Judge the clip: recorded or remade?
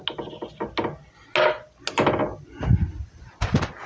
recorded